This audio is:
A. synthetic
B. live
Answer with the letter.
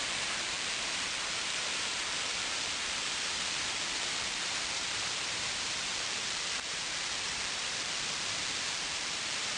A